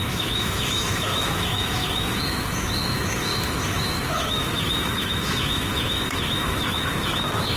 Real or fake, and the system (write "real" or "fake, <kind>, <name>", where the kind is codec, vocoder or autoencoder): fake, autoencoder, DAC-VAE